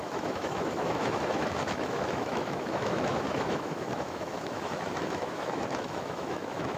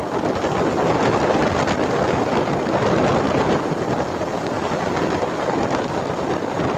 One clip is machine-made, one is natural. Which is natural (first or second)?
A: second